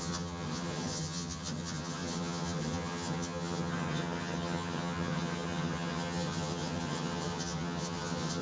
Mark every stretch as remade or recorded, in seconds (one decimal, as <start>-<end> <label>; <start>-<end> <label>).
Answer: 0.0-8.4 remade